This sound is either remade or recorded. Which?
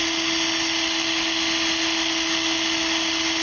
recorded